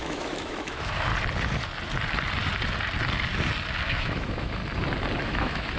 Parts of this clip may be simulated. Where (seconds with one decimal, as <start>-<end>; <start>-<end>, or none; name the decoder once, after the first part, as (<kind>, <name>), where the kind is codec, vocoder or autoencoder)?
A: 0.0-1.1 (autoencoder, DAC-VAE); 3.9-4.6; 5.2-5.8